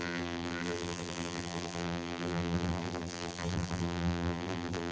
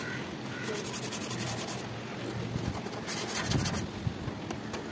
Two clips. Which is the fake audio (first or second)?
first